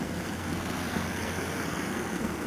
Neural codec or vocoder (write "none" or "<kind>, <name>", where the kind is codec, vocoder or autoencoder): codec, SNAC